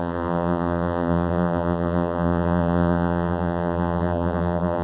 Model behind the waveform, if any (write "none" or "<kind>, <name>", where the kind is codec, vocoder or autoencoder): vocoder, BigVGAN v2